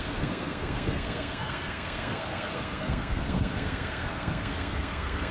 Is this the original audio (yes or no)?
no